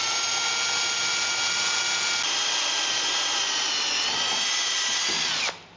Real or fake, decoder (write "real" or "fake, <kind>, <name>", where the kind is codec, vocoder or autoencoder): real